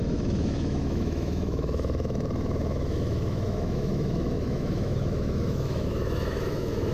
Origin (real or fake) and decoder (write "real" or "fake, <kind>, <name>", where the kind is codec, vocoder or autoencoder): fake, autoencoder, DAC-VAE